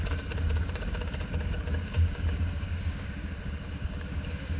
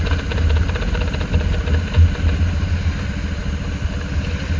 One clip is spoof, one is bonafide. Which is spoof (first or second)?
first